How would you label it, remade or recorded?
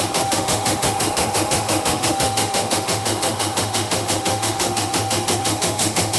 remade